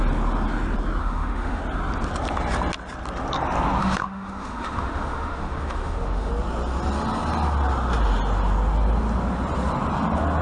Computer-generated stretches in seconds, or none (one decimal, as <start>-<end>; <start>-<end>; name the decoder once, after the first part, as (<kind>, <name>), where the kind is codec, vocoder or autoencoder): 1.0-1.6 (autoencoder, DAC-VAE); 3.8-6.3

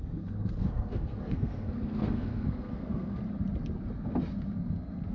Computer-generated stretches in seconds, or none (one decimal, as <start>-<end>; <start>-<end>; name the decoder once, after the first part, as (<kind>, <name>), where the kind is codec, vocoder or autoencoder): 0.0-3.2 (codec, SNAC)

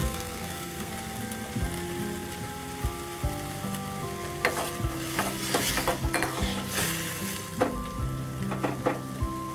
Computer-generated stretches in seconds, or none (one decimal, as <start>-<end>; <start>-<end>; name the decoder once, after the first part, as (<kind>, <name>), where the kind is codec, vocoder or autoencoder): 0.0-0.9 (codec, SNAC)

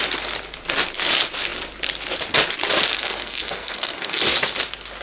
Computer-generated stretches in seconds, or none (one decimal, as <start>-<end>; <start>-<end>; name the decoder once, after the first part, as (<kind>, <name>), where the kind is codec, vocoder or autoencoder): 2.9-4.2 (codec, SNAC)

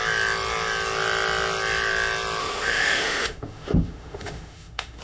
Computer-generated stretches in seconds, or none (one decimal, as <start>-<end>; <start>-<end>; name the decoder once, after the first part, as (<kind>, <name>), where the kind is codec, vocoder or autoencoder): 2.4-5.0 (autoencoder, DAC-VAE)